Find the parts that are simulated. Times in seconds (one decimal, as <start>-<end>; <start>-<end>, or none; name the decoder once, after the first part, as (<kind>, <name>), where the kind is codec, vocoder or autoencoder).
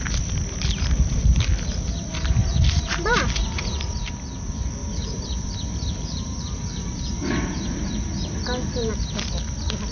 2.4-4.1 (vocoder, BigVGAN v2); 4.8-8.9